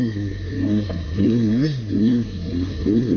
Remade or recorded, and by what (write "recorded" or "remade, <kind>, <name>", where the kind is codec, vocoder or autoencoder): remade, codec, SNAC